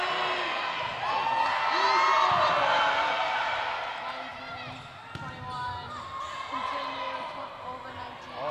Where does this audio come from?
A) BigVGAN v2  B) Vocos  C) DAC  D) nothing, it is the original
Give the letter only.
D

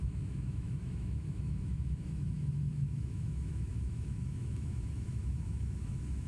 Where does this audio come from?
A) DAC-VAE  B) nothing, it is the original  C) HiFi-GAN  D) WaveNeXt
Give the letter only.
A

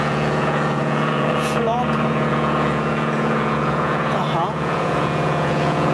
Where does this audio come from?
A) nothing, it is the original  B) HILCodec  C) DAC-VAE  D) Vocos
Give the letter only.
D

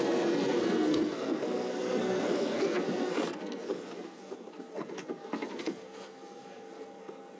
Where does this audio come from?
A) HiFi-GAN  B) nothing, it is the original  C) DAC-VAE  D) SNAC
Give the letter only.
D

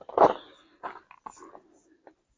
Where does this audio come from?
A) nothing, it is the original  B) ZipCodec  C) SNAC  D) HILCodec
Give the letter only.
A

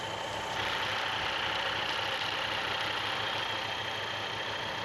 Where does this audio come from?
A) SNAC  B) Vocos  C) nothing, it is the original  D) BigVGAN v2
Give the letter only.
C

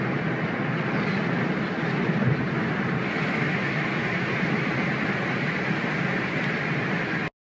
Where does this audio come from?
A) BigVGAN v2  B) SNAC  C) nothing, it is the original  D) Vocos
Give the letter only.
C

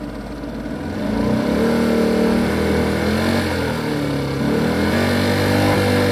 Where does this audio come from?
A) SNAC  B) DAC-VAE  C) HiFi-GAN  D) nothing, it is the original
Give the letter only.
D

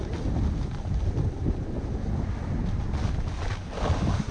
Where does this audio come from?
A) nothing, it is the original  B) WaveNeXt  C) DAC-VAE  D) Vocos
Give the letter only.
A